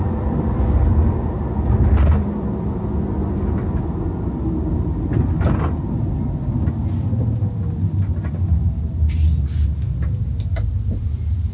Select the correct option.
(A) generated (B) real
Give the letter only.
B